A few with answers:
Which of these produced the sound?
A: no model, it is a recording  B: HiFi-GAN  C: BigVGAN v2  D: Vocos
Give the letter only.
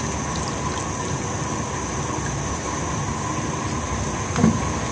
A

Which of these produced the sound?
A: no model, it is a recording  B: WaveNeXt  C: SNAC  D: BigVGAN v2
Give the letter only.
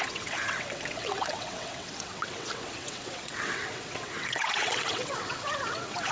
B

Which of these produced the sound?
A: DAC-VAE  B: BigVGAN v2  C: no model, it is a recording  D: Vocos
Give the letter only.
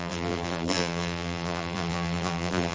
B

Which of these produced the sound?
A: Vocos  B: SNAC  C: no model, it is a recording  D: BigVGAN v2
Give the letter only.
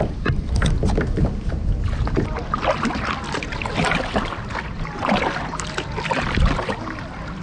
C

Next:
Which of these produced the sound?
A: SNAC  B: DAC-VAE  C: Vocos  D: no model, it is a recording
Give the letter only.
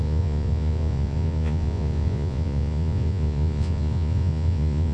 C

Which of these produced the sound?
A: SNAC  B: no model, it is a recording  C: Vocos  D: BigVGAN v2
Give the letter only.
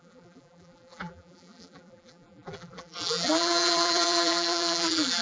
D